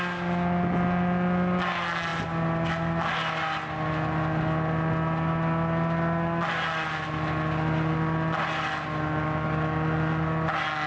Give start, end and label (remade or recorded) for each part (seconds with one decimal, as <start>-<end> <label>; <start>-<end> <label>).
0.0-10.9 recorded